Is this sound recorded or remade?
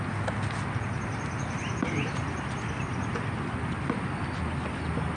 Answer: recorded